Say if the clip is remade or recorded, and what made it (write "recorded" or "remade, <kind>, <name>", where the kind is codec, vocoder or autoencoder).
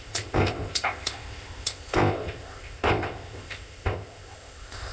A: remade, codec, ZipCodec